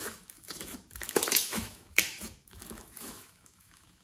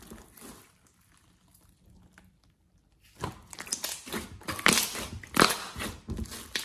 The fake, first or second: first